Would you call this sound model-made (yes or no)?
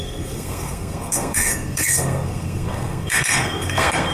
yes